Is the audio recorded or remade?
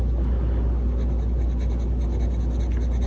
recorded